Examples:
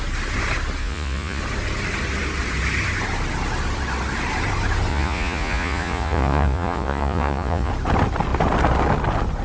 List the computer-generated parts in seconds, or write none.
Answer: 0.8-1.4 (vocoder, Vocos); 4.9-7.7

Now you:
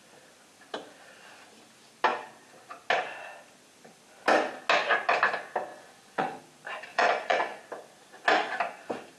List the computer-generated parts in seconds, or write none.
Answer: 5.7-6.4 (vocoder, Vocos); 6.9-7.6

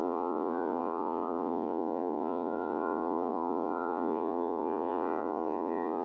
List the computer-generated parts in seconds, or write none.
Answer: 0.0-6.0 (vocoder, Vocos)

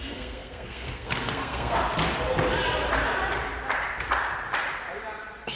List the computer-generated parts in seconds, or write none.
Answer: 0.0-1.8 (codec, SNAC)